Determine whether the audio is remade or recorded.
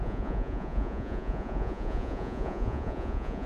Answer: remade